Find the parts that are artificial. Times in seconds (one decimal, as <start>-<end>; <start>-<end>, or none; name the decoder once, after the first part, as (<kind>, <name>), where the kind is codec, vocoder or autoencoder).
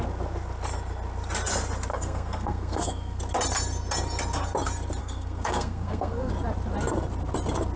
1.9-3.2 (codec, SNAC); 5.0-6.3